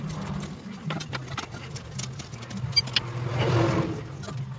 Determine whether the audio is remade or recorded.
recorded